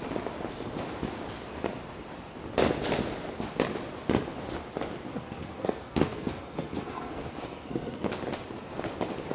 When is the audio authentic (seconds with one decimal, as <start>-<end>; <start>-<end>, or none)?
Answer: 0.0-5.1; 8.1-9.3